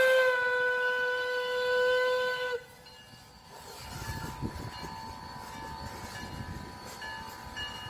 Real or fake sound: real